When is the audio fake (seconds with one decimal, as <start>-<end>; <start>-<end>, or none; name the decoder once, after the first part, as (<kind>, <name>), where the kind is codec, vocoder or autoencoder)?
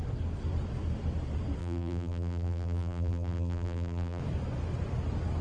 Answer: 1.6-4.2 (vocoder, BigVGAN v2)